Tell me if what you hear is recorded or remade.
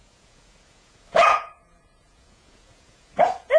remade